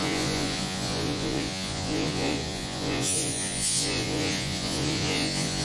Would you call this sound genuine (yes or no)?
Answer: no